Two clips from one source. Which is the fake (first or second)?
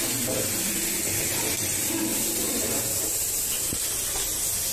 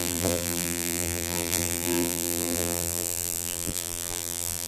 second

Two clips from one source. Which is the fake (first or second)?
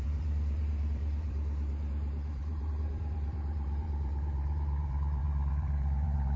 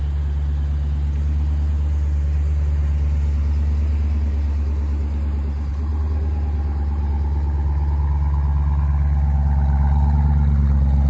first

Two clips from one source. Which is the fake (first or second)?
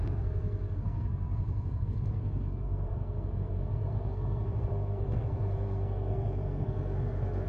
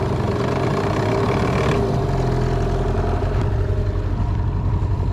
first